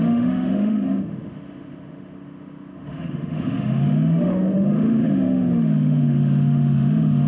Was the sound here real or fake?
fake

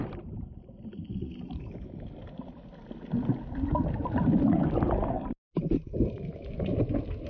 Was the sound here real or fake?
real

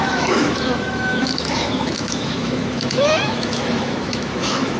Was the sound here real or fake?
fake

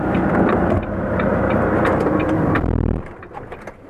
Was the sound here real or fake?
real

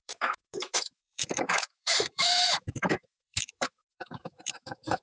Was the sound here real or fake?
fake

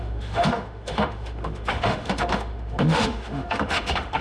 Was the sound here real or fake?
fake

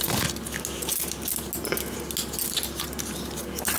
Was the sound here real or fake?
real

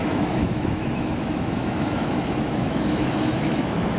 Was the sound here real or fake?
fake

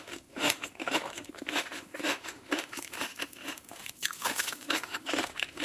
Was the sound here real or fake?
fake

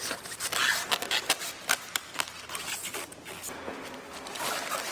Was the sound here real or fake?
real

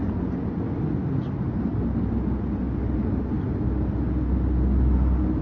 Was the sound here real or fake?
real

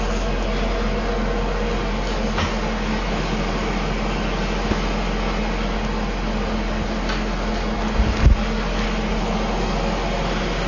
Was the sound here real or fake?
real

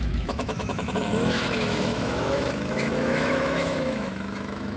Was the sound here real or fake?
fake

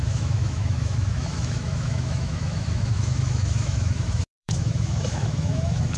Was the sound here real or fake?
fake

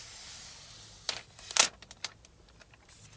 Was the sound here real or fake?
real